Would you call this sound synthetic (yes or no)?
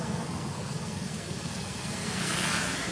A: yes